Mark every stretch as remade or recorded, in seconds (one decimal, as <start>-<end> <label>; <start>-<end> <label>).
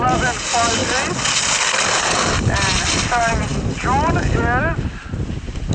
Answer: 0.0-5.7 recorded